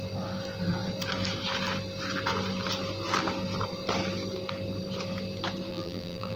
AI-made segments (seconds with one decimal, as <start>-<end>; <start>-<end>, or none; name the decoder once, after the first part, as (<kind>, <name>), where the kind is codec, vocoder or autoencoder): 5.7-6.4 (vocoder, BigVGAN v2)